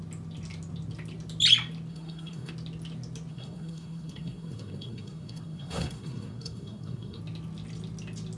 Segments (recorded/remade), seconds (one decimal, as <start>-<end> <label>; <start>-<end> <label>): 0.0-1.9 recorded; 1.9-2.5 remade; 2.5-3.3 recorded; 3.3-7.2 remade; 7.2-8.4 recorded